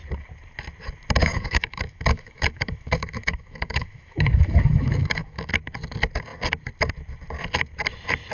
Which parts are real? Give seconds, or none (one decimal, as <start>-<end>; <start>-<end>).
0.0-1.2; 5.5-8.3